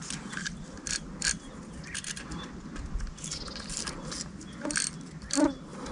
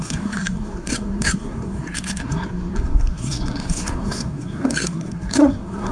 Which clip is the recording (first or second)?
first